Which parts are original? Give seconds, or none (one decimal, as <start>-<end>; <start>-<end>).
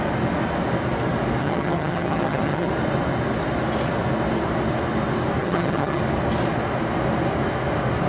0.0-1.4; 2.7-5.4; 6.0-8.1